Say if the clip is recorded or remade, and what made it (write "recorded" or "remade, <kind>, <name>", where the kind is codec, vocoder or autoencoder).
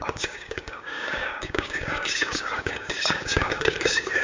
remade, codec, DAC